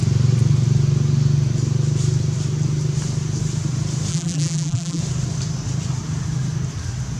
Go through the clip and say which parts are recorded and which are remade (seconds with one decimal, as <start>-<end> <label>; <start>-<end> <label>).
0.0-4.1 recorded; 4.1-5.0 remade; 5.0-7.2 recorded